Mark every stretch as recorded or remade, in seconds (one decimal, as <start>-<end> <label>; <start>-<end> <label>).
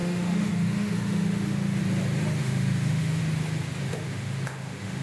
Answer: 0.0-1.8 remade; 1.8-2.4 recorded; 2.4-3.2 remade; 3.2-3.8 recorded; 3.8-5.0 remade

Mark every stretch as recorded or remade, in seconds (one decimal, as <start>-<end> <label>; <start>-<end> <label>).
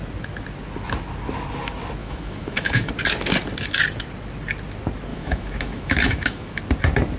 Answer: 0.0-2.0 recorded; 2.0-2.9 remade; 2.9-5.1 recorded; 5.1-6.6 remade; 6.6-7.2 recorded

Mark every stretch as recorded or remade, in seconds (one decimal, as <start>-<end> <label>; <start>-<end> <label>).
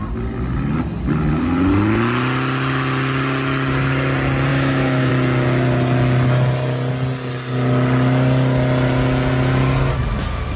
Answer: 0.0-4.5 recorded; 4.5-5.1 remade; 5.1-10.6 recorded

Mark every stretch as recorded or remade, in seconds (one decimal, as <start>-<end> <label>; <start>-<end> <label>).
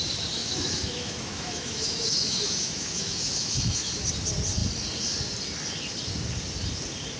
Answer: 0.0-0.4 recorded; 0.4-3.9 remade; 3.9-7.2 recorded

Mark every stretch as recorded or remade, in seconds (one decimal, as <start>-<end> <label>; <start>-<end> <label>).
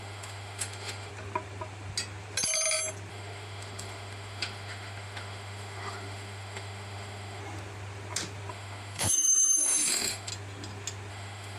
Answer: 0.0-1.1 remade; 1.1-3.1 recorded; 3.1-7.4 remade; 7.4-8.5 recorded; 8.5-10.3 remade; 10.3-11.1 recorded; 11.1-11.6 remade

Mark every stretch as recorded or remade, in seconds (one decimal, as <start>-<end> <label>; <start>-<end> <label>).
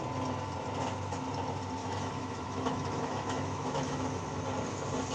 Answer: 0.0-1.8 recorded; 1.8-4.4 remade; 4.4-5.1 recorded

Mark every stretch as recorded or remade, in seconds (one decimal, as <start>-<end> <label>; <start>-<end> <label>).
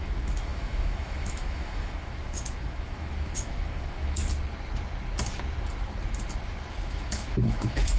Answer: 0.0-4.2 remade; 4.2-6.7 recorded; 6.7-8.0 remade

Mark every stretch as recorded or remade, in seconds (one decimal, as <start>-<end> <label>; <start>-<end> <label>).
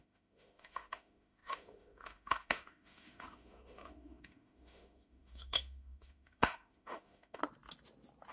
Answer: 0.0-7.4 remade; 7.4-8.3 recorded